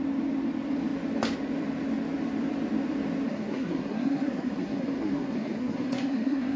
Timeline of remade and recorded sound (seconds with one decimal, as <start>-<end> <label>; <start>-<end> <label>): 0.0-3.3 recorded; 3.3-6.6 remade